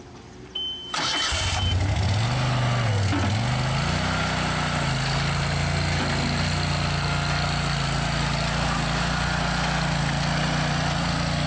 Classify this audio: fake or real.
real